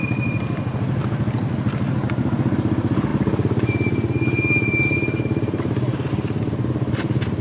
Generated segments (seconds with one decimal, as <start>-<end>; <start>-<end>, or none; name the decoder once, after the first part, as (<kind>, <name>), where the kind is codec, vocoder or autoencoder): 3.1-6.1 (vocoder, BigVGAN v2)